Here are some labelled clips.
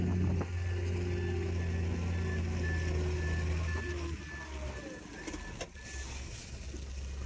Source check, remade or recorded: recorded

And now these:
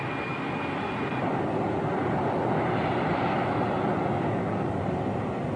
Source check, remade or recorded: recorded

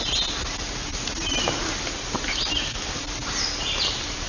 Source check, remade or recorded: recorded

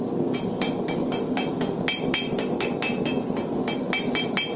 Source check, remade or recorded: recorded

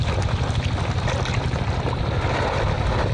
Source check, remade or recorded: recorded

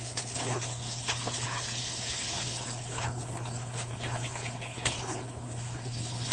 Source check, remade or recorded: remade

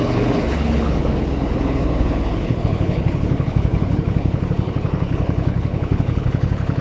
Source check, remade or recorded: remade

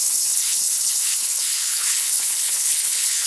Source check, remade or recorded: remade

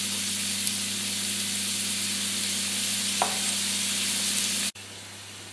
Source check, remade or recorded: recorded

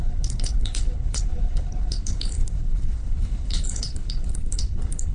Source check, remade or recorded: remade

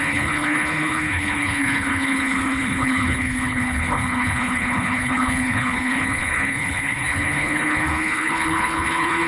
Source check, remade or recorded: remade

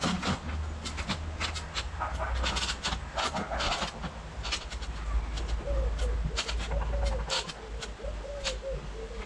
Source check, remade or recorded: recorded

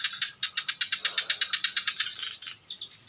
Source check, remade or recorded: recorded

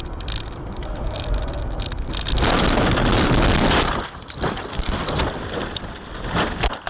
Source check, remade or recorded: recorded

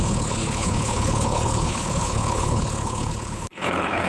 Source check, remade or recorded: remade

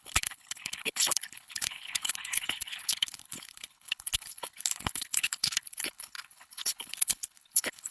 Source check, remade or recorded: remade